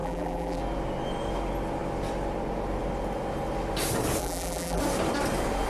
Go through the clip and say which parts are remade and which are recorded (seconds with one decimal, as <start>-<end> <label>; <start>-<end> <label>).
0.0-0.6 remade; 0.6-4.2 recorded; 4.2-4.8 remade; 4.8-5.7 recorded